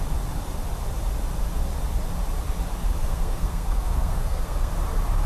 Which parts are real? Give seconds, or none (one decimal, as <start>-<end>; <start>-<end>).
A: 0.0-3.0; 4.7-5.3